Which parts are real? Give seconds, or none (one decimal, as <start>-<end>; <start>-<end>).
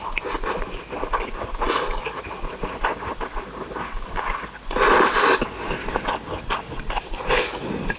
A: 0.0-8.0